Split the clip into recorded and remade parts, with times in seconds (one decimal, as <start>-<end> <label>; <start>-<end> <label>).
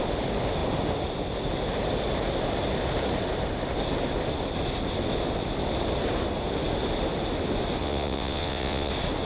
0.0-7.8 recorded; 7.8-8.9 remade; 8.9-9.3 recorded